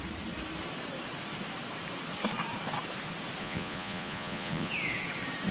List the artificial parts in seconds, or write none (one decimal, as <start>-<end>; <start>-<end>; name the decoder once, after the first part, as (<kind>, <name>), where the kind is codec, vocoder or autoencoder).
3.4-4.7 (vocoder, Vocos)

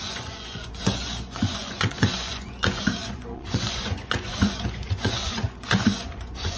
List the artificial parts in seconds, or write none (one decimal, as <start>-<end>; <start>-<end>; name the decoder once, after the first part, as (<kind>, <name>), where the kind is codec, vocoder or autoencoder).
0.0-6.6 (vocoder, Vocos)

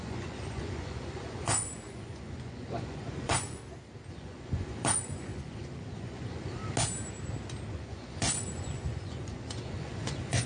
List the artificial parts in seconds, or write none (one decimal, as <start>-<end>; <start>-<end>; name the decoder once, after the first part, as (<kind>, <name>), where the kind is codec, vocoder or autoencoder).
0.0-3.6 (vocoder, Vocos); 4.1-6.6; 7.7-10.5

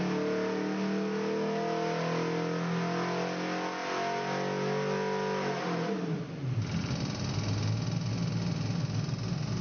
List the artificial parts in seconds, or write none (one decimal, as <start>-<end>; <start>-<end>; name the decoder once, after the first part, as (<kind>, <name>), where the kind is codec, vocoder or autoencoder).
none

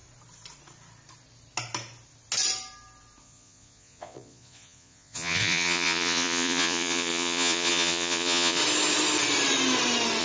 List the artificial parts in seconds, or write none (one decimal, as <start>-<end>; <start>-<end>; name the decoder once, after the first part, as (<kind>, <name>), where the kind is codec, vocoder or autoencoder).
3.2-8.6 (vocoder, Vocos)